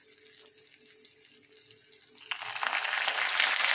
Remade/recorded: recorded